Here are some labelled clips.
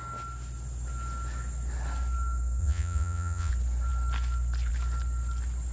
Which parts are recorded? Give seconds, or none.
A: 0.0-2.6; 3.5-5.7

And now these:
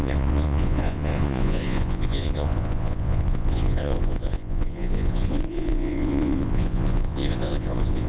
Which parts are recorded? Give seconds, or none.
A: none